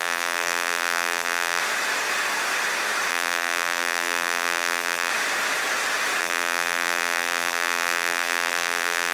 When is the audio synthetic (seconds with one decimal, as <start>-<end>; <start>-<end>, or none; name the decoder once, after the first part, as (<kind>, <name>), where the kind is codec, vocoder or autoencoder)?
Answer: 0.0-1.6 (vocoder, BigVGAN v2); 3.1-5.1; 6.2-9.1